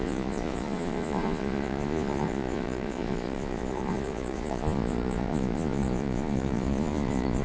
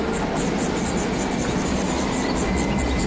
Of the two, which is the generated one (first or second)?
first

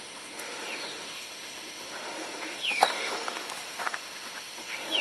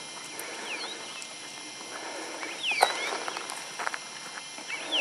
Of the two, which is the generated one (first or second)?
first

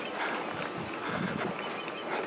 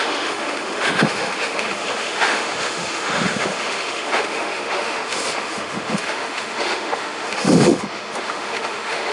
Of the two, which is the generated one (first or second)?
second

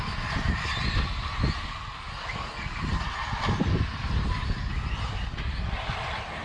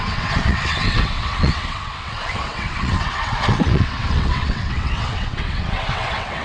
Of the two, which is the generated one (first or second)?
second